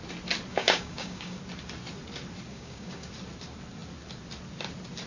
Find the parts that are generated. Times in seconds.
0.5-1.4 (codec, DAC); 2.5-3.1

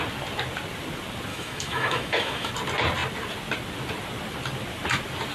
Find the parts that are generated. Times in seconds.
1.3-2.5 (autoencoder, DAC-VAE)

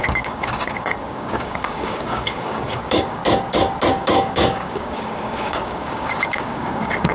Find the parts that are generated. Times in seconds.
0.0-3.2 (codec, DAC); 3.9-7.1